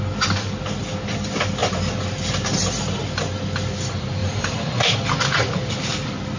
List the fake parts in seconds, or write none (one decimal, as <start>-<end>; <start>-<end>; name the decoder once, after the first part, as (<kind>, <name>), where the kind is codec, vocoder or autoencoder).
4.2-5.7 (vocoder, BigVGAN v2)